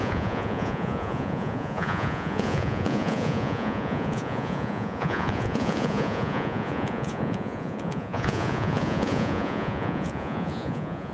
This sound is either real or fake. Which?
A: fake